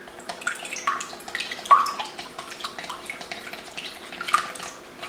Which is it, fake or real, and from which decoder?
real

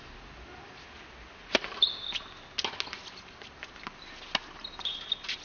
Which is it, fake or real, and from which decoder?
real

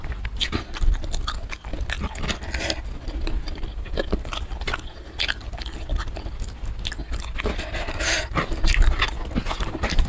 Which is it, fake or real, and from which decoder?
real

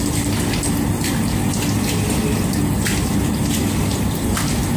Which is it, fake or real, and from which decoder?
real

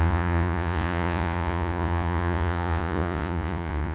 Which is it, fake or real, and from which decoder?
fake, vocoder, Vocos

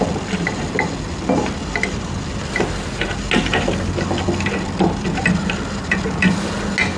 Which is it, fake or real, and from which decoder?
real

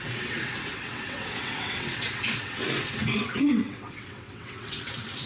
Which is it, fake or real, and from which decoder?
fake, vocoder, WaveNeXt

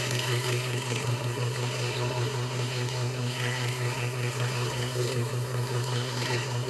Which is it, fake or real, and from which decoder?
fake, codec, SNAC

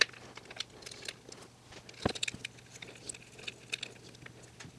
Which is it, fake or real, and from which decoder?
real